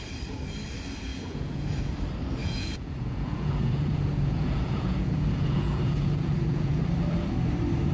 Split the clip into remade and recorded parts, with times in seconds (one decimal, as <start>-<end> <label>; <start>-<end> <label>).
0.0-1.1 recorded; 1.1-1.9 remade; 1.9-2.4 recorded; 2.4-6.8 remade; 6.8-7.9 recorded